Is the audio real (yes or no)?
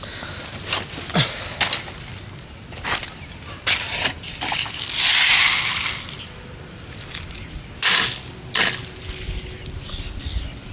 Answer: yes